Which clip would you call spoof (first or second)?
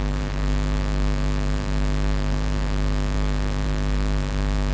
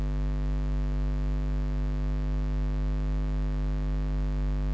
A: first